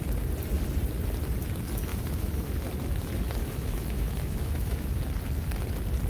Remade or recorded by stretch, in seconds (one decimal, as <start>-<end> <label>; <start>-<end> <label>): 0.0-1.9 recorded; 1.9-2.5 remade; 2.5-3.4 recorded; 3.4-5.0 remade; 5.0-6.1 recorded